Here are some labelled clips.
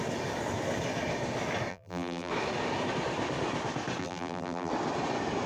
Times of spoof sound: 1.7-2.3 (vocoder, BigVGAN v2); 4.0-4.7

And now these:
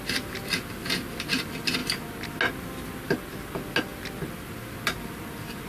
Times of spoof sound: none

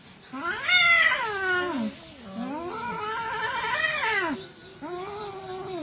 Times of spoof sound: none

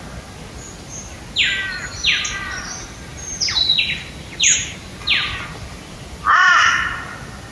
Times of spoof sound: 3.1-6.5 (vocoder, BigVGAN v2)